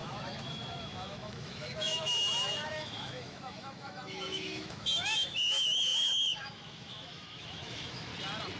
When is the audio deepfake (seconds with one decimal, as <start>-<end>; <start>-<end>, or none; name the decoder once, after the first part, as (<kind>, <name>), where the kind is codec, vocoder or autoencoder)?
0.0-8.1 (autoencoder, DAC-VAE)